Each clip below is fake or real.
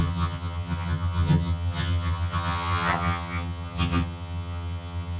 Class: fake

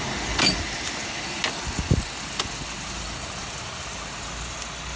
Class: real